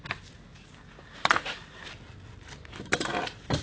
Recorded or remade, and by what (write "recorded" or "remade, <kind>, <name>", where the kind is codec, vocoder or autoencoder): recorded